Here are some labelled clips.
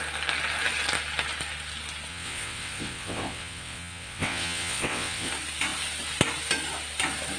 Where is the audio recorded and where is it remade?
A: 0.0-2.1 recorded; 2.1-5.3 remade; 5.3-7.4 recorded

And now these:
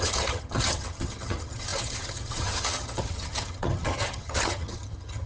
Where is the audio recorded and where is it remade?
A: 0.0-5.3 remade

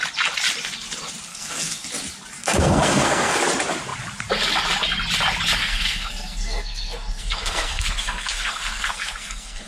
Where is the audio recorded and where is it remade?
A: 0.0-1.3 recorded; 1.3-1.9 remade; 1.9-2.4 recorded; 2.4-3.4 remade; 3.4-5.6 recorded; 5.6-9.7 remade